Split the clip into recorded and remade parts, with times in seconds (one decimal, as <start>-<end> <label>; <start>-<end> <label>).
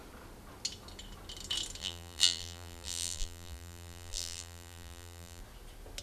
0.0-1.8 recorded; 1.8-5.4 remade; 5.4-6.0 recorded